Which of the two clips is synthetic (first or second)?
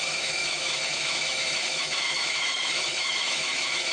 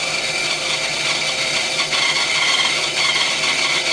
first